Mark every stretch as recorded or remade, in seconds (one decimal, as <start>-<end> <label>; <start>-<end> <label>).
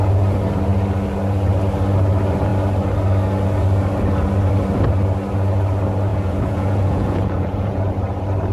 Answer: 0.0-6.1 recorded; 6.1-7.9 remade; 7.9-8.5 recorded